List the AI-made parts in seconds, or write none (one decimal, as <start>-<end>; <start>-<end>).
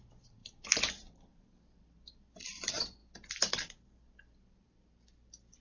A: 0.0-0.4; 0.9-3.0; 3.5-5.6